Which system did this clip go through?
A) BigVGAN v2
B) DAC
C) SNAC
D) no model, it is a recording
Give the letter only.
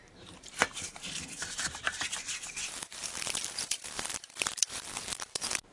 A